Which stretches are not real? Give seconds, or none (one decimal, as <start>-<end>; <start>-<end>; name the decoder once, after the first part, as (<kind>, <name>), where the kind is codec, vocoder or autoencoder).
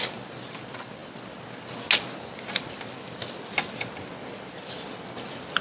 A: none